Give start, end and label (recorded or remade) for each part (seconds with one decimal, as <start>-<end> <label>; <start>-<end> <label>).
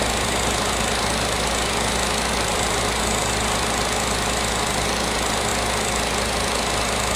0.0-2.3 recorded; 2.3-2.8 remade; 2.8-7.2 recorded